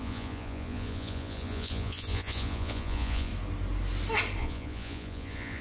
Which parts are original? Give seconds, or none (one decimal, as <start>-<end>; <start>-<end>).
3.3-4.4